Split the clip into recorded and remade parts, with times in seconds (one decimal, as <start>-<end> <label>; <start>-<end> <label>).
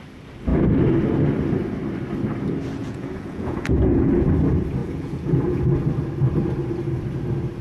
0.0-2.8 recorded; 2.8-4.1 remade; 4.1-4.8 recorded; 4.8-5.6 remade; 5.6-7.6 recorded